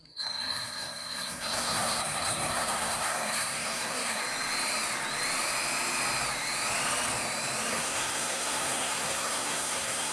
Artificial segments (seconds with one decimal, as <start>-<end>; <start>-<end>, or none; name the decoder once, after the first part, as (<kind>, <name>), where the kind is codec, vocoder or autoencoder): 0.0-4.2 (codec, SNAC); 7.7-10.1